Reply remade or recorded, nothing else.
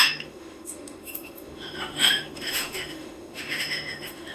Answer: remade